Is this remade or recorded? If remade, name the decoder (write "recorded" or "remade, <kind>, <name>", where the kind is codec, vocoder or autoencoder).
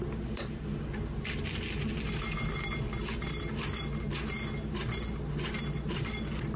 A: recorded